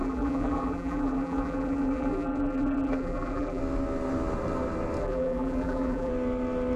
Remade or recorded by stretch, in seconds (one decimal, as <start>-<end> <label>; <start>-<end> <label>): 0.0-3.6 remade; 3.6-5.0 recorded; 5.0-6.1 remade; 6.1-6.8 recorded